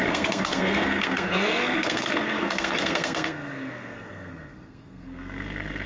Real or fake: fake